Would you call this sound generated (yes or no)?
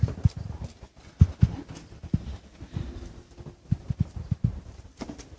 no